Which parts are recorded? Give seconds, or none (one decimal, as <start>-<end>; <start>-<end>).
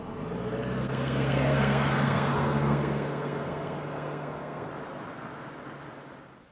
0.0-0.8; 4.7-6.5